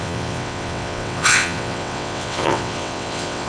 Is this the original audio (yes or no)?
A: no